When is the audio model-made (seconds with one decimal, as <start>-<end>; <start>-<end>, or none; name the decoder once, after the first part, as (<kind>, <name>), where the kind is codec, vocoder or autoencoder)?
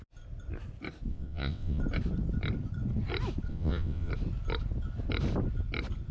1.1-1.8 (vocoder, WaveNeXt); 3.5-4.1